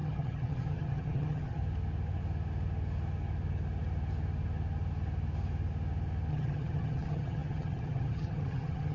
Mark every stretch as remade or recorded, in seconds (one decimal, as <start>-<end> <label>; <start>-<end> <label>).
0.0-1.6 remade; 1.6-6.3 recorded; 6.3-8.9 remade